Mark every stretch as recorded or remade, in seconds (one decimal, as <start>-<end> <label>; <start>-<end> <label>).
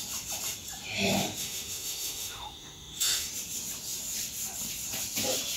0.0-1.4 recorded; 1.4-3.3 remade; 3.3-5.6 recorded